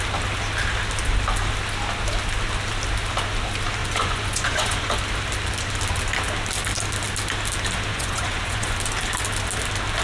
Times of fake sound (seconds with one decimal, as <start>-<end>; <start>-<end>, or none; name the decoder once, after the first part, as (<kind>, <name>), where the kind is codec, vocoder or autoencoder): 3.8-4.9 (vocoder, Vocos); 7.9-8.8